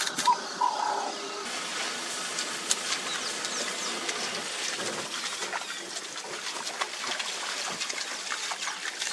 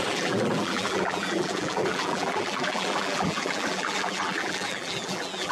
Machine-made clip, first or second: second